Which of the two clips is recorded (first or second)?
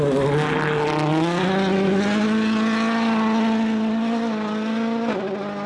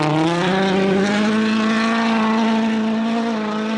first